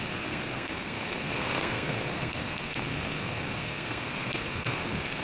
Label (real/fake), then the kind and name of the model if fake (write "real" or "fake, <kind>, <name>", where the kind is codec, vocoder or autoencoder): fake, codec, SNAC